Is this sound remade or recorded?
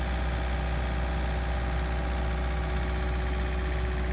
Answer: recorded